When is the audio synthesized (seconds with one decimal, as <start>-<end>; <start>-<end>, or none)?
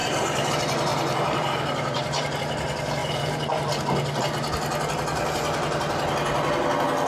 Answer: 0.0-0.5; 0.9-2.4; 3.0-3.8